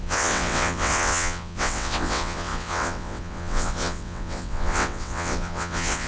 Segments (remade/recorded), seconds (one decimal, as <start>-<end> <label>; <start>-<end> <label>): 0.0-6.1 remade